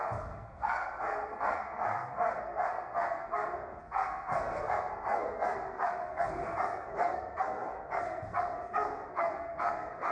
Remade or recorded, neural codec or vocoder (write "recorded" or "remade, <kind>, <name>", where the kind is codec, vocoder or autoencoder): remade, codec, SNAC